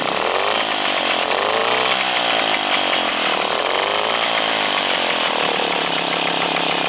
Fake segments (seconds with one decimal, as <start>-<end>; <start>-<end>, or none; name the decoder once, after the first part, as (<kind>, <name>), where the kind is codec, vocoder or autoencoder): none